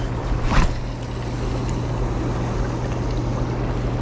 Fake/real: real